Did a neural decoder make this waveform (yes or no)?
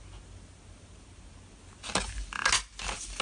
no